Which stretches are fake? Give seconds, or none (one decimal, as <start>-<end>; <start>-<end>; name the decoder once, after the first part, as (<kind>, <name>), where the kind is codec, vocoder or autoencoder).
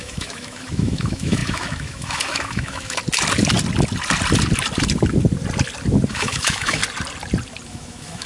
0.0-3.0 (autoencoder, DAC-VAE); 6.1-6.8; 7.7-8.3